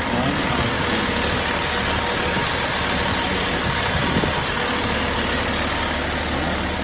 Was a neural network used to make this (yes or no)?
no